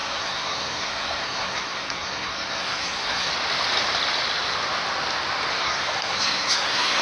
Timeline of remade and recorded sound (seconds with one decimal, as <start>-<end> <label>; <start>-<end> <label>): 0.0-3.3 remade; 3.3-5.5 recorded; 5.5-7.0 remade